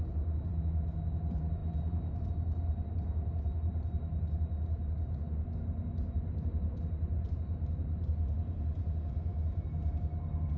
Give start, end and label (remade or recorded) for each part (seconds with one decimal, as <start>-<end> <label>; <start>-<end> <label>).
0.0-0.5 remade; 0.5-1.2 recorded; 1.2-10.6 remade